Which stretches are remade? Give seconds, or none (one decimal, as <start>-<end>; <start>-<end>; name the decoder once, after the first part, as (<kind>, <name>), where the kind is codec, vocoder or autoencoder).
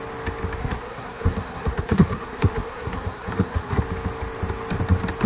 0.6-3.8 (codec, SNAC)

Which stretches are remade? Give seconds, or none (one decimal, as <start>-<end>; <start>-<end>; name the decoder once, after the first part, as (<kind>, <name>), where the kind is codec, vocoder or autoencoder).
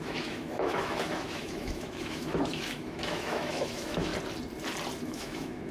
0.0-4.1 (autoencoder, DAC-VAE); 5.0-5.7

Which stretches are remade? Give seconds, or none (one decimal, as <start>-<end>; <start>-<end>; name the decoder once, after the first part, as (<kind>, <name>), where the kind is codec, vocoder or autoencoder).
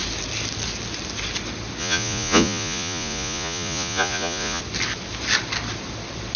1.8-4.6 (vocoder, Vocos)